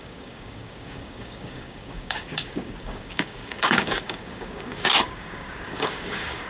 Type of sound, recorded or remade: remade